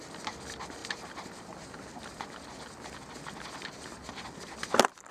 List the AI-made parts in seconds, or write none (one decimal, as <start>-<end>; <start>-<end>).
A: none